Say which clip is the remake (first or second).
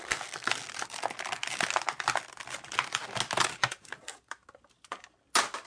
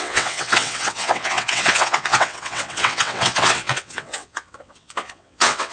second